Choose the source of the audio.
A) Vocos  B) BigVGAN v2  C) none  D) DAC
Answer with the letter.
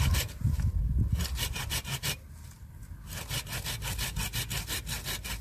C